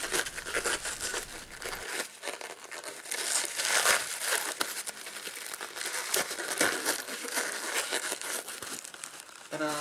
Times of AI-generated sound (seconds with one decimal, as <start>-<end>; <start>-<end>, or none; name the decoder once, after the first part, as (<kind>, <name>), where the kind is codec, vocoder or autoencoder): none